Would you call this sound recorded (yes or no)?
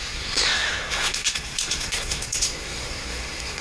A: no